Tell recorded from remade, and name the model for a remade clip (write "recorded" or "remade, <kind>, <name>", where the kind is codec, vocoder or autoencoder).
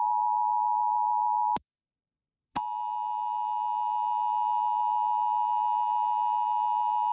recorded